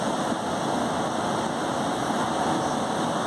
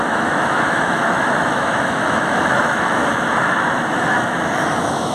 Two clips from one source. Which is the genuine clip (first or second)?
first